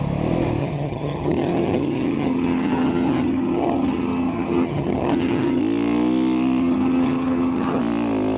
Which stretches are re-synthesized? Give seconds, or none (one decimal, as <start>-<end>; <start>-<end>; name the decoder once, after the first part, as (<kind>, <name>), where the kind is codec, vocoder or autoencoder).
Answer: 0.6-5.6 (vocoder, HiFi-GAN); 6.6-7.8